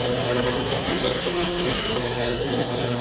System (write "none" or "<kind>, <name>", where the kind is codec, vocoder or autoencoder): codec, SNAC